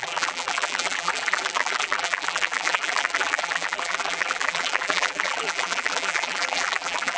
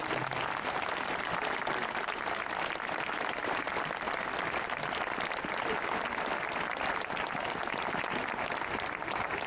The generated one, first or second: first